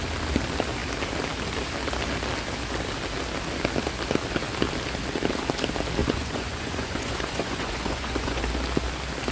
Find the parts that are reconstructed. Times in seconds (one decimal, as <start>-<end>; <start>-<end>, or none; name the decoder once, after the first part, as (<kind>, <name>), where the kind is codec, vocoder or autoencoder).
6.0-8.4 (vocoder, Vocos)